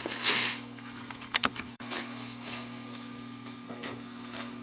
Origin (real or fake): fake